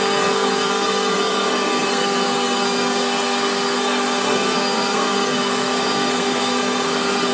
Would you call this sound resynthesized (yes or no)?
yes